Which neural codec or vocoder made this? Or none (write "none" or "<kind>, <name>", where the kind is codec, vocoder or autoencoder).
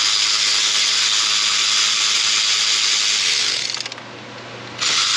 none